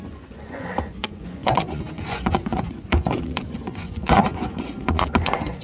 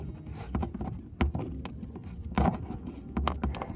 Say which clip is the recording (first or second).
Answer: second